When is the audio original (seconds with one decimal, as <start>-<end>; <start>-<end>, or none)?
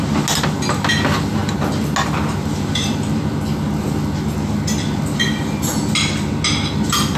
0.0-7.2